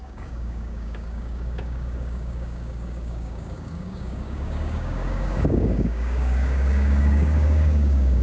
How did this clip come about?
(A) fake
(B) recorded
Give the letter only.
A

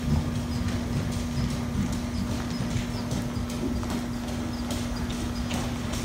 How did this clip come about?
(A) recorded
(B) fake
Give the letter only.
A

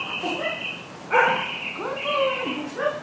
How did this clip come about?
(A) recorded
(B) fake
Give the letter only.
A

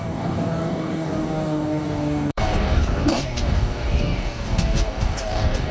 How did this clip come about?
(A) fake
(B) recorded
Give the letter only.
A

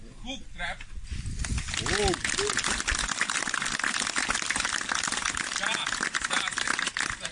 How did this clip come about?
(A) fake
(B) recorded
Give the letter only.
B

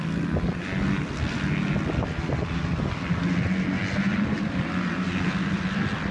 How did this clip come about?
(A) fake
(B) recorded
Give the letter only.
B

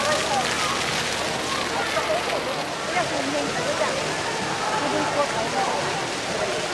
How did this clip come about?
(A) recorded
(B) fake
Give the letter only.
A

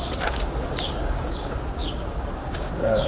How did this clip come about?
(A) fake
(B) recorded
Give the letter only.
A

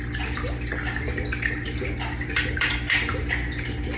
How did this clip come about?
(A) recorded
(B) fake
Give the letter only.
A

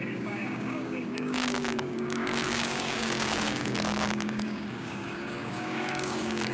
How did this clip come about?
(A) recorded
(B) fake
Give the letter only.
B